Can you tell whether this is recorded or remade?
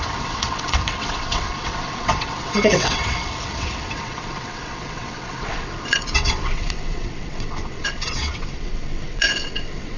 remade